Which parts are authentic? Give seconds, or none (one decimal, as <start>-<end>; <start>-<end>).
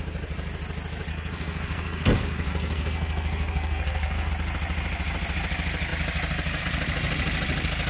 0.0-1.1; 4.3-7.9